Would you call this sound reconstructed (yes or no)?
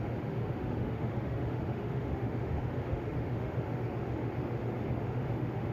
yes